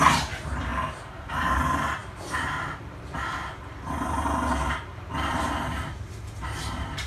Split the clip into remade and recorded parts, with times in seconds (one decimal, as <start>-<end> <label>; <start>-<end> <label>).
0.0-7.1 recorded